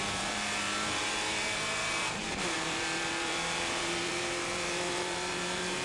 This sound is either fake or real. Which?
fake